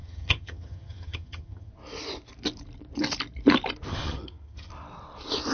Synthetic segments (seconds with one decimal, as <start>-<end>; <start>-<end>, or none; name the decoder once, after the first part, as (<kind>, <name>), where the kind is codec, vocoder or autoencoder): 0.0-1.7 (vocoder, HiFi-GAN); 3.9-4.7